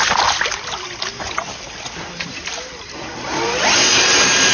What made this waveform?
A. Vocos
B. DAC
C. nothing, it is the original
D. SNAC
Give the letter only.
C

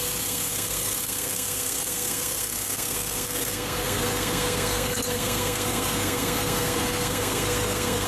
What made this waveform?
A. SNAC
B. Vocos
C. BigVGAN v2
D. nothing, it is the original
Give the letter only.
A